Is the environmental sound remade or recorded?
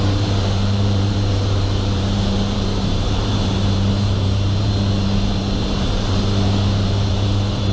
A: remade